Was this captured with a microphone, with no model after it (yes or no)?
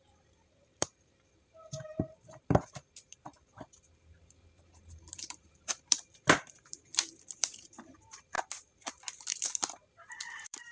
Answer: no